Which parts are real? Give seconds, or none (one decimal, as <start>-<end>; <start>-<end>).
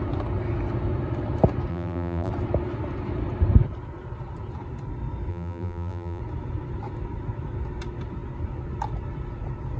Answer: 0.0-1.7; 2.3-5.3; 6.2-9.8